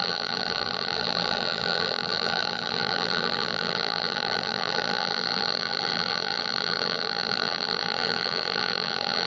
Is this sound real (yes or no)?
no